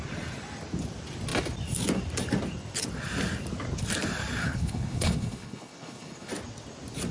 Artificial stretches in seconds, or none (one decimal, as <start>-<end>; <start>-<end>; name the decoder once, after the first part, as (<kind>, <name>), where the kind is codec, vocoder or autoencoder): 4.4-6.3 (codec, HILCodec)